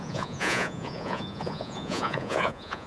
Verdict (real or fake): fake